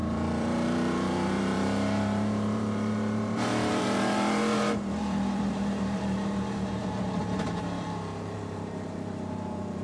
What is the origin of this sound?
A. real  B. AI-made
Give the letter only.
B